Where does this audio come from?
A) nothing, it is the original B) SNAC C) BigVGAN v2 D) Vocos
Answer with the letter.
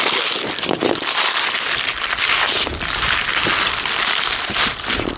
C